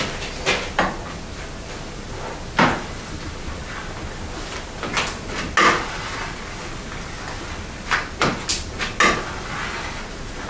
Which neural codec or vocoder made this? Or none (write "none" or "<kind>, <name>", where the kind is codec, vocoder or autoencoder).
none